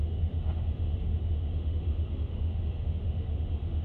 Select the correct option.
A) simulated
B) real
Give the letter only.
A